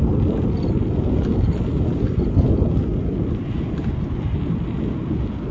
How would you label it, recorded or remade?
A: recorded